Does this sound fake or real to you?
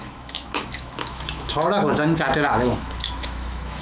fake